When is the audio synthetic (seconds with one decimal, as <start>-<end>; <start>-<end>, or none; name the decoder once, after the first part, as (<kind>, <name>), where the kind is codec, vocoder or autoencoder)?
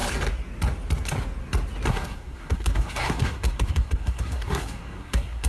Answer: 1.9-5.5 (codec, SNAC)